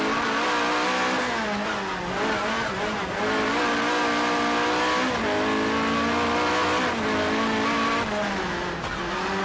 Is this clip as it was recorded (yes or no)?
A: yes